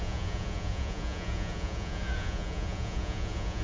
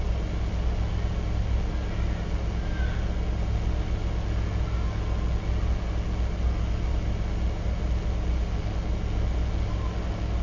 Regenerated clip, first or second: first